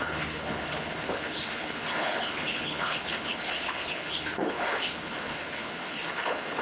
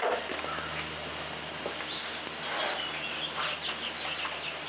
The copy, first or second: first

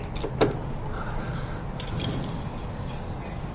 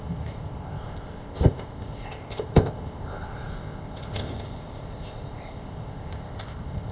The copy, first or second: second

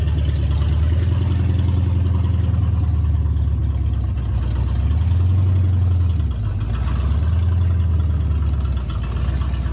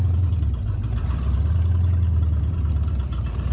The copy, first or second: second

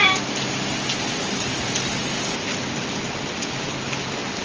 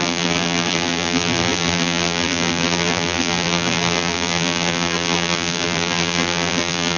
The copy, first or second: second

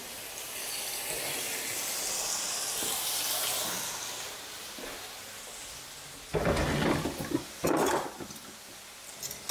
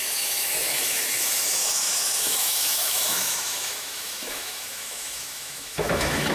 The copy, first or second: second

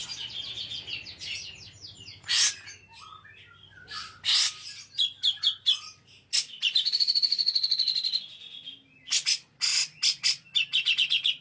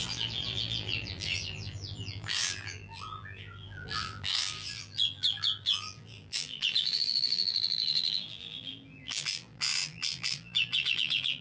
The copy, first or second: second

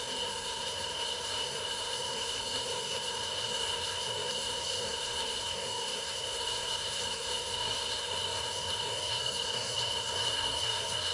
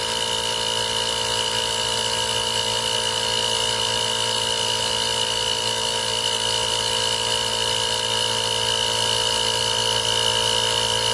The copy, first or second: first